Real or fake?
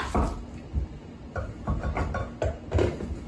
real